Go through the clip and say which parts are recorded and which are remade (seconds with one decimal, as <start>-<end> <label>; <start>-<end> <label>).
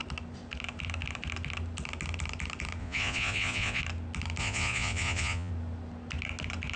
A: 0.0-2.8 recorded; 2.8-3.8 remade; 3.8-4.4 recorded; 4.4-5.5 remade; 5.5-6.8 recorded